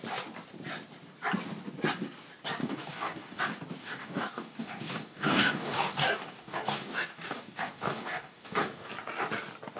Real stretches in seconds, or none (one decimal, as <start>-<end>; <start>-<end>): 0.0-2.6; 3.4-3.8; 8.9-9.8